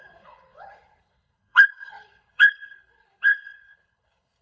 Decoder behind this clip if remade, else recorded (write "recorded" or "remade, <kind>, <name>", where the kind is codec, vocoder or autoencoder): remade, codec, HILCodec